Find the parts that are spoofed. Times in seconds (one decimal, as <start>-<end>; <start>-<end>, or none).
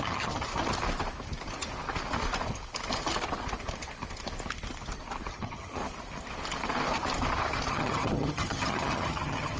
0.0-0.5; 5.3-5.8; 7.7-9.6